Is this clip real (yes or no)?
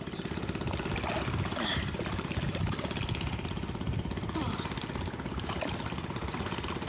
yes